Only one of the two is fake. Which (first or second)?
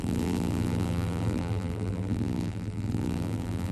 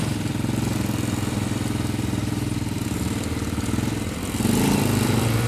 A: first